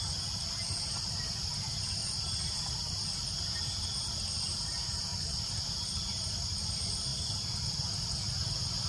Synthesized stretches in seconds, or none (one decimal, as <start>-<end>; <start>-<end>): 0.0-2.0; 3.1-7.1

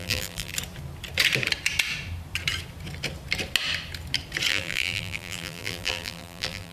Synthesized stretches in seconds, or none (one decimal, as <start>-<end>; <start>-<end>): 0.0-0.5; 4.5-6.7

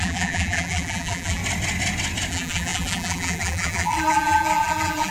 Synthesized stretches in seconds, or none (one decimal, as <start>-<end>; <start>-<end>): 0.0-1.4; 2.3-5.1

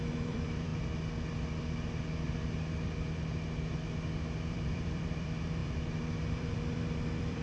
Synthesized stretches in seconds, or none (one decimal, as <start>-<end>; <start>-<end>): 0.0-0.7; 4.5-5.6; 6.2-7.4